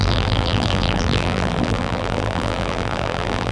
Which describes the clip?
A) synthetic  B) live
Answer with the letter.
A